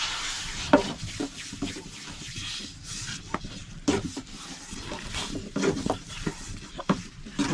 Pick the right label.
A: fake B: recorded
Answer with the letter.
A